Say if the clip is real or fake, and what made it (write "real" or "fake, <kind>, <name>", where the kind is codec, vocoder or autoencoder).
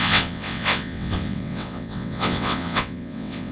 fake, vocoder, WaveNeXt